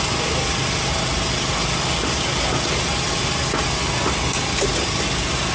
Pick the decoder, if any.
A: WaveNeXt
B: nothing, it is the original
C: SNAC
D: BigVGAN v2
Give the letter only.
B